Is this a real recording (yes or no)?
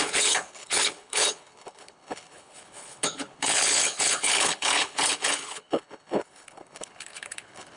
no